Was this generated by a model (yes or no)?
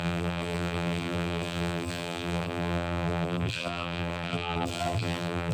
yes